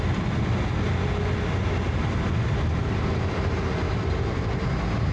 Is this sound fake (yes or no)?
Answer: no